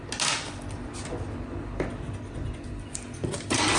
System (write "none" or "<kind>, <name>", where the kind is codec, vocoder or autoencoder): none